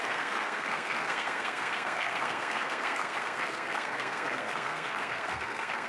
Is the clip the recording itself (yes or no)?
no